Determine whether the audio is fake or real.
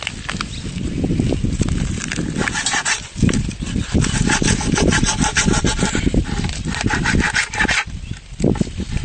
real